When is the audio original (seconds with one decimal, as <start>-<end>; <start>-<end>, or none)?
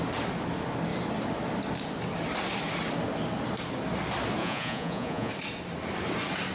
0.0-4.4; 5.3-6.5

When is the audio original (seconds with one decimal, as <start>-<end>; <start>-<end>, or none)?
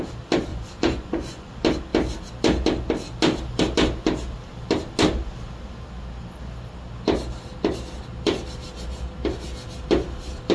0.0-0.5; 1.5-10.5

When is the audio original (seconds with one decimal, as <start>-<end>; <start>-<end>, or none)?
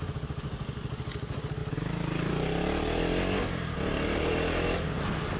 0.0-5.4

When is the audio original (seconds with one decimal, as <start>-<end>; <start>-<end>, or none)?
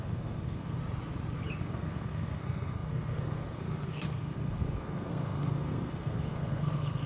0.8-1.6